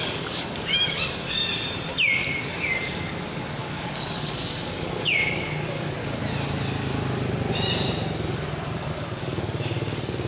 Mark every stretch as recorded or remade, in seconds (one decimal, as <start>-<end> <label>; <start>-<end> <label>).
0.0-1.4 remade; 1.4-2.4 recorded; 2.4-6.2 remade; 6.2-8.7 recorded; 8.7-10.3 remade